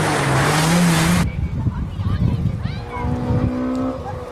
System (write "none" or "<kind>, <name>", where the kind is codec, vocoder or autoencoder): none